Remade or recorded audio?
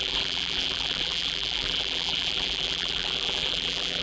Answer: remade